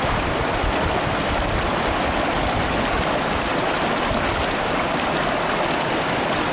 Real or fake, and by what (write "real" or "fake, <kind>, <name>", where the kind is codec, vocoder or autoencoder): real